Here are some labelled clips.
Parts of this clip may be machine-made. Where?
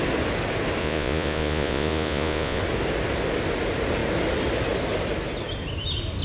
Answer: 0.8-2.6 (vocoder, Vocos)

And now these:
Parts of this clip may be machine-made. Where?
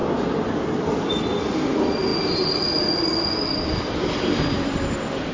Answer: none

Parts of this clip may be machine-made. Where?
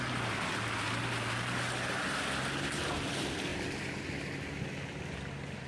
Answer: none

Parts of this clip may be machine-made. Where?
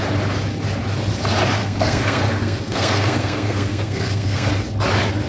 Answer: 1.6-4.5 (codec, SNAC)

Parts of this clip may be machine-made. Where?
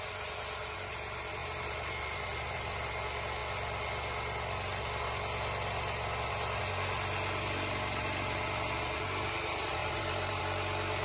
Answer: 1.4-2.9 (vocoder, BigVGAN v2); 9.8-10.4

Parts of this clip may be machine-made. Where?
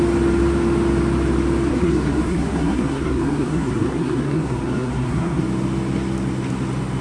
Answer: 1.7-5.4 (codec, SNAC)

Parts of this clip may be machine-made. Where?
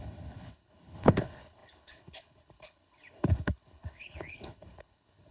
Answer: 0.0-5.3 (codec, HILCodec)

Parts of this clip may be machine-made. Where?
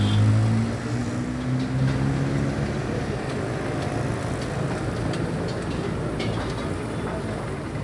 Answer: none